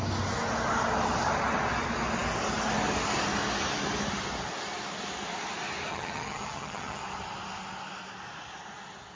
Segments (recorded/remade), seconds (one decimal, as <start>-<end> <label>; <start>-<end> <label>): 0.0-5.9 recorded; 5.9-7.0 remade; 7.0-9.1 recorded